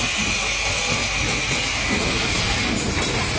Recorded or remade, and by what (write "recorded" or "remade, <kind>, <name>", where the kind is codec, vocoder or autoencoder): recorded